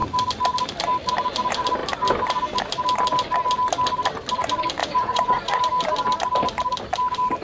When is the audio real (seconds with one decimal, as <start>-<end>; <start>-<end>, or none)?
0.0-4.8; 5.6-7.4

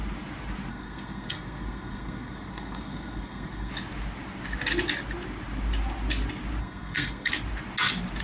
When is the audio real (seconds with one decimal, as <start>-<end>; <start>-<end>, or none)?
0.0-0.7; 3.7-6.6; 7.3-8.2

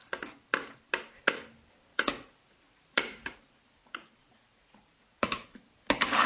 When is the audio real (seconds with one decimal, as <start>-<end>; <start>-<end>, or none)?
0.0-1.9; 3.4-3.8; 5.6-6.3

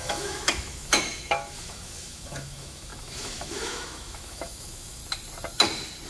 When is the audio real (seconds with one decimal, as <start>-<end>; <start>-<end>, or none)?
5.0-6.1

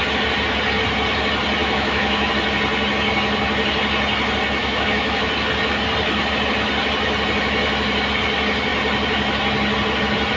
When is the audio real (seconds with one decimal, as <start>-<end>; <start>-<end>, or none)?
0.0-1.6; 2.3-4.6; 5.2-10.4

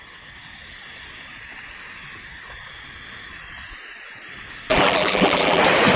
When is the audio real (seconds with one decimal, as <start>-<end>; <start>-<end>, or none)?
0.0-4.7; 5.6-6.0

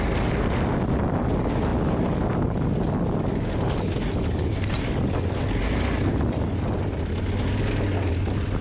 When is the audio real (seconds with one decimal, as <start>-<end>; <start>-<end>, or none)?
0.0-8.6